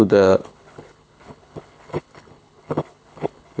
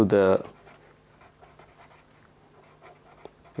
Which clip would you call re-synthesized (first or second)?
first